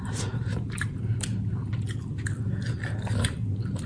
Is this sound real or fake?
real